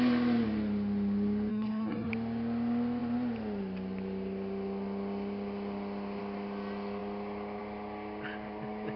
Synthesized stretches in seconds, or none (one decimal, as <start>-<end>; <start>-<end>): 1.5-2.1